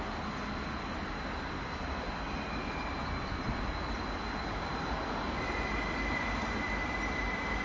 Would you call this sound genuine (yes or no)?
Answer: yes